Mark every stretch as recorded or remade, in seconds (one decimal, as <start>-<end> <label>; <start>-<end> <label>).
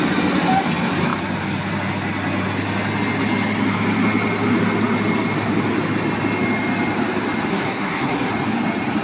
0.0-7.5 recorded; 7.5-8.3 remade; 8.3-9.0 recorded